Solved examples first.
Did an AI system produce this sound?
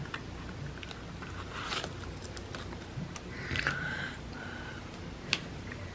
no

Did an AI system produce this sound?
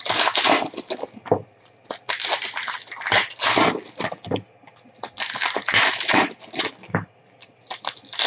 no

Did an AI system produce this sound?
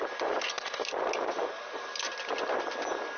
no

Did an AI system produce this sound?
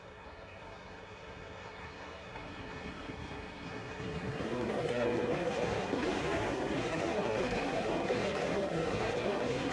yes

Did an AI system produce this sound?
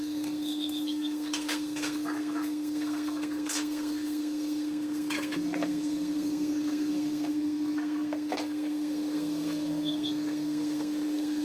yes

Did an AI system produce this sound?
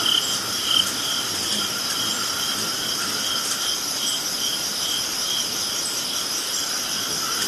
no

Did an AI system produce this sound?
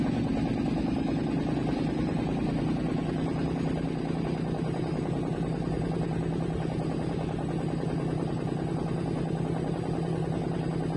no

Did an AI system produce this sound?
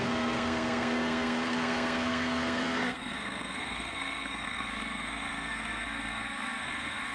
yes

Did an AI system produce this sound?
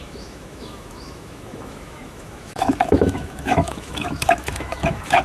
yes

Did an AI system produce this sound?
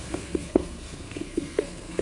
yes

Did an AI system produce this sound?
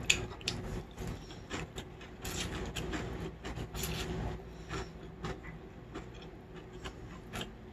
no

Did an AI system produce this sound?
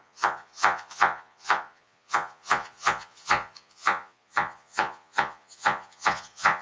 yes